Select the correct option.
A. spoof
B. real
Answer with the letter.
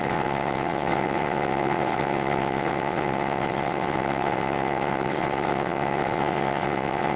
A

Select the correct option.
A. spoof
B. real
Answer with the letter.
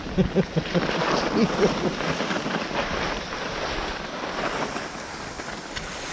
B